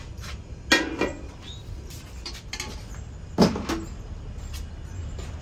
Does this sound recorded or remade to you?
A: recorded